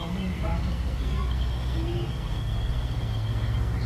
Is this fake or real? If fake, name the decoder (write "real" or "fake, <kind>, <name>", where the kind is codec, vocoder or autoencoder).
fake, codec, SNAC